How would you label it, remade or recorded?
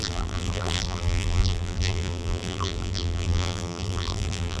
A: remade